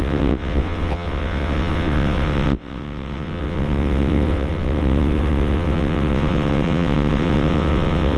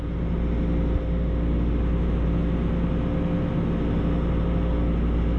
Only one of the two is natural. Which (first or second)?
second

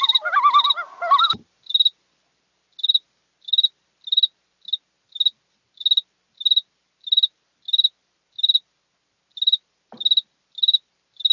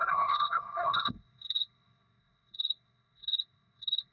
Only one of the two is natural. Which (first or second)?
first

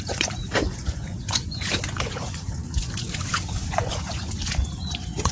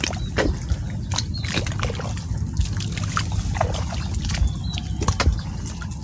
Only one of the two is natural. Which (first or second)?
second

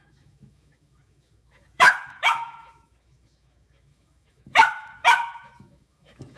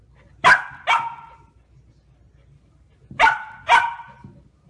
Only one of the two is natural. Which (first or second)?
second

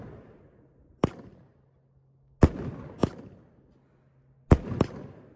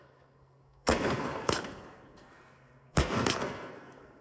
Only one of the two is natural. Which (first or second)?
first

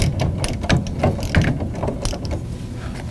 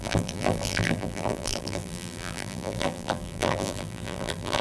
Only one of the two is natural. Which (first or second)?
first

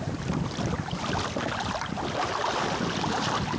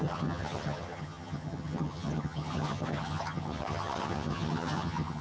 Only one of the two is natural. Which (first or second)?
first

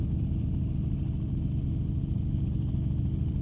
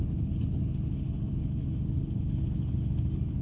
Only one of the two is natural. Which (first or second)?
first